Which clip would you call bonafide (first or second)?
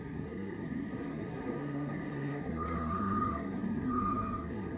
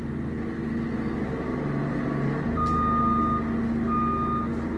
second